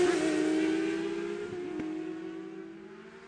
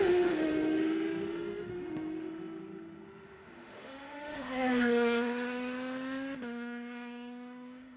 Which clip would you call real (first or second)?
first